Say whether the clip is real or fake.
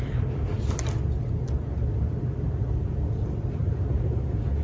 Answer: real